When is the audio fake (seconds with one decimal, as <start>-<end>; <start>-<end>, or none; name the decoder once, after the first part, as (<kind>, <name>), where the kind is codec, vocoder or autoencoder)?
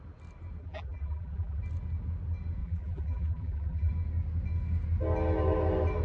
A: 0.6-1.6 (vocoder, BigVGAN v2); 2.6-3.9